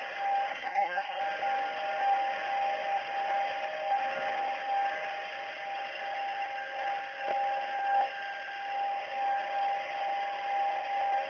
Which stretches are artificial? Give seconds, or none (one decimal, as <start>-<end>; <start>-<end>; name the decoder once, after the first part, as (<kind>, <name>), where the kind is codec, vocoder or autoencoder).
0.5-1.2 (codec, SNAC)